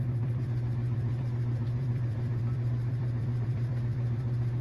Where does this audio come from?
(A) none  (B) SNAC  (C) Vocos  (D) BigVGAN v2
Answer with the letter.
D